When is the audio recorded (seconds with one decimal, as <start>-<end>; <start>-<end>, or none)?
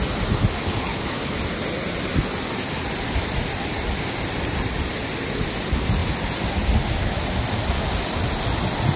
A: 0.0-0.9; 1.4-9.0